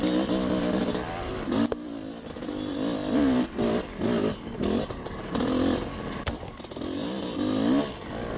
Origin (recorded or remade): recorded